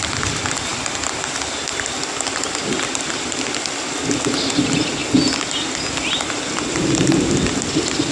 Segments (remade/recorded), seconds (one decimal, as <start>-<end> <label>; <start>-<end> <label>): 0.0-8.1 recorded